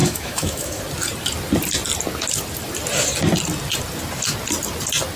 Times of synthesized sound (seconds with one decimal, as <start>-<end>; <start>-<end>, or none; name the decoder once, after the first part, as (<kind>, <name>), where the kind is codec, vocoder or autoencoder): 0.0-0.8 (autoencoder, DAC-VAE)